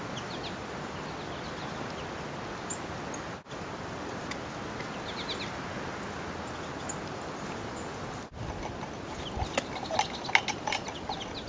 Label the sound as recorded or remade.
recorded